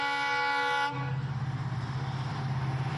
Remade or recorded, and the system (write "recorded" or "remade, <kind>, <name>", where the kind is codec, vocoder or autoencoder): recorded